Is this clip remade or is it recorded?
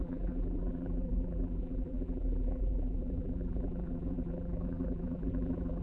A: remade